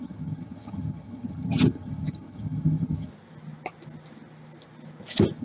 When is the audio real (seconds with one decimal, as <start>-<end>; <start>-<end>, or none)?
3.1-5.4